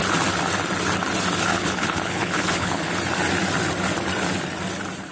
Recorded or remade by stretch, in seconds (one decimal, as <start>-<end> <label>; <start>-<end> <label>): 0.0-1.5 recorded; 1.5-2.9 remade; 2.9-5.1 recorded